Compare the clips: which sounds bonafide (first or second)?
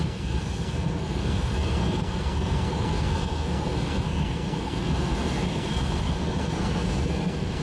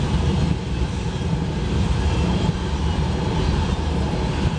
second